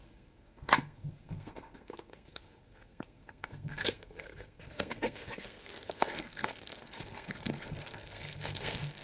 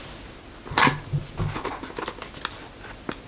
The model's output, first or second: first